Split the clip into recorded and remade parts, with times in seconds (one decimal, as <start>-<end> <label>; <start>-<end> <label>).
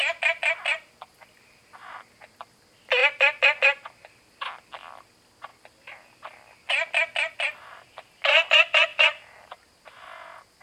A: 0.0-10.6 recorded